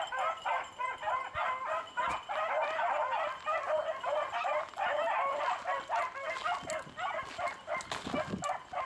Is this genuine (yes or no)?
yes